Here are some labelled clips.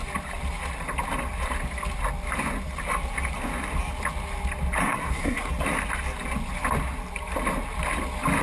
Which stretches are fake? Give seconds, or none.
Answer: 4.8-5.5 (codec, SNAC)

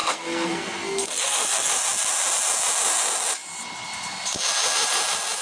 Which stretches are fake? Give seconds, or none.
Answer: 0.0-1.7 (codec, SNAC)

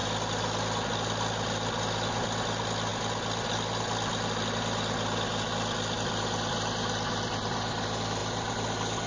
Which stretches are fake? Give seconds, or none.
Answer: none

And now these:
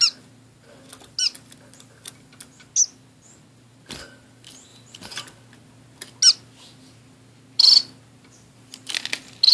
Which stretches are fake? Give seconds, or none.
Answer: none